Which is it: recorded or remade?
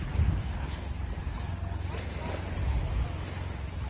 recorded